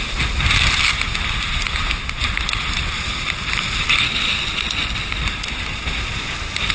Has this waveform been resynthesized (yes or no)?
no